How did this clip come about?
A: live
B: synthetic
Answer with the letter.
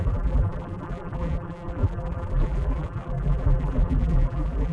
B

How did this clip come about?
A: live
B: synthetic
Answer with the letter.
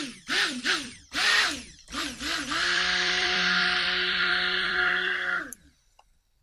B